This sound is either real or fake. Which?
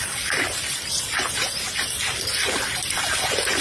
real